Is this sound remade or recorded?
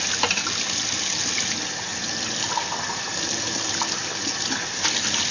recorded